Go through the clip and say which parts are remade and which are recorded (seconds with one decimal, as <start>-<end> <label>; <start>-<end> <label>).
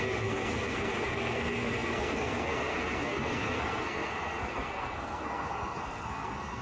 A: 0.0-6.6 remade